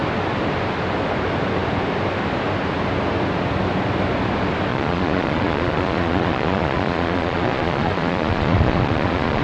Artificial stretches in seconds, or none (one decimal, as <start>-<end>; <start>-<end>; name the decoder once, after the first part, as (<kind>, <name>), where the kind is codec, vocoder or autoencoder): 4.7-9.4 (vocoder, Vocos)